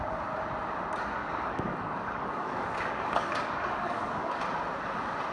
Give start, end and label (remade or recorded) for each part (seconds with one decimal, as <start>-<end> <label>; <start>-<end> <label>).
0.0-1.2 recorded; 1.2-4.4 remade; 4.4-5.3 recorded